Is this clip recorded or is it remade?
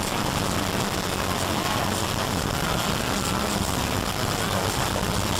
recorded